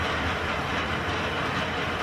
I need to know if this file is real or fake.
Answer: real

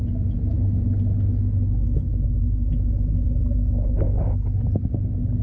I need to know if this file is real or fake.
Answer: real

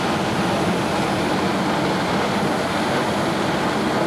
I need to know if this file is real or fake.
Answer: real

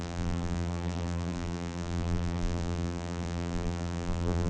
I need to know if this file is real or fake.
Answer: fake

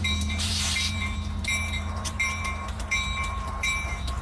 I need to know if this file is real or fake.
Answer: fake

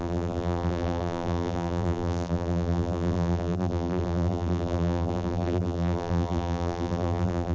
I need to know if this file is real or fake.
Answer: fake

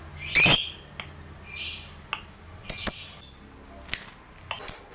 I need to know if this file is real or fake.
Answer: real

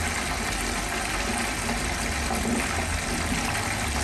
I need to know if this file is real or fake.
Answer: real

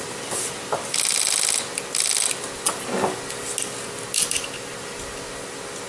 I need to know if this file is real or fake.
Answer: real